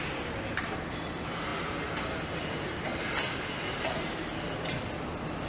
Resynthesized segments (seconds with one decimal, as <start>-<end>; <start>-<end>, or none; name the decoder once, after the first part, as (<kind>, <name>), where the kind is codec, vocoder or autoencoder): none